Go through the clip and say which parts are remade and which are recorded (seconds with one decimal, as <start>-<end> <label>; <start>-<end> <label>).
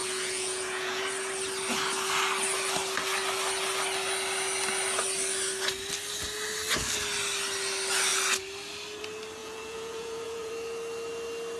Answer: 0.0-1.0 remade; 1.0-9.4 recorded; 9.4-10.5 remade; 10.5-11.6 recorded